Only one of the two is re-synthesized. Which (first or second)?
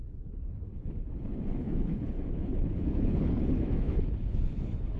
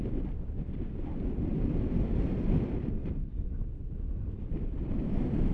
first